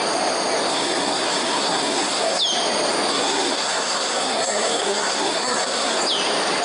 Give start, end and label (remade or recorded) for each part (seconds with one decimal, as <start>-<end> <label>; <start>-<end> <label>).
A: 0.0-0.7 recorded; 0.7-2.4 remade; 2.4-3.1 recorded; 3.1-6.0 remade; 6.0-6.6 recorded